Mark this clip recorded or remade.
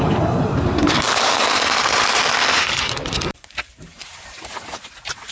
remade